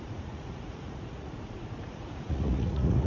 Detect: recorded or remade remade